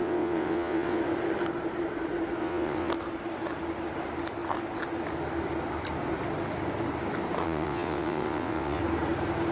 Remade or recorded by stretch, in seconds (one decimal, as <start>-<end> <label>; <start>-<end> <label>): 0.0-1.0 remade; 1.0-2.4 recorded; 2.4-2.9 remade; 2.9-7.4 recorded; 7.4-8.8 remade; 8.8-9.5 recorded